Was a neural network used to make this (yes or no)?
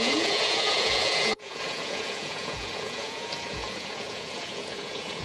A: yes